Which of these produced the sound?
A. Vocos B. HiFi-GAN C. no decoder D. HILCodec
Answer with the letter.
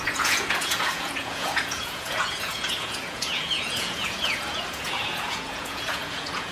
A